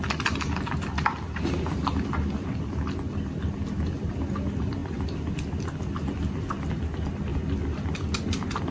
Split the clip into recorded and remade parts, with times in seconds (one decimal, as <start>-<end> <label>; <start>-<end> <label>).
0.0-8.7 recorded